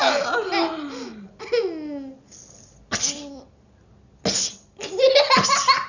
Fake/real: real